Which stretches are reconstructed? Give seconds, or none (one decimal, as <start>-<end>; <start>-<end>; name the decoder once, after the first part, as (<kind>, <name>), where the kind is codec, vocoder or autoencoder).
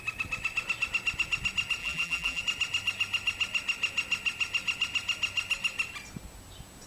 1.8-2.4 (vocoder, BigVGAN v2)